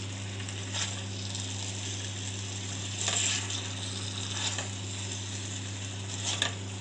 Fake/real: real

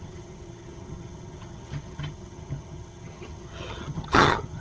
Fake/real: fake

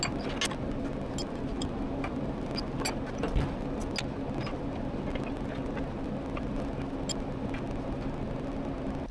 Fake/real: real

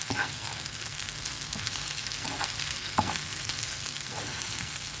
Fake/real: fake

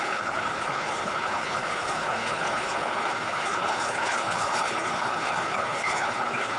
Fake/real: fake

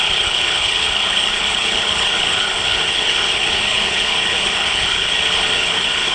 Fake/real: fake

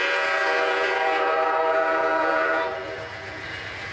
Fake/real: fake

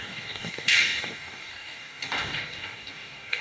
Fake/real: fake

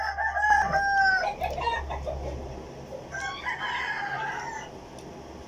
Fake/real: real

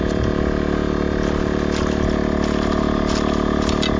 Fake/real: real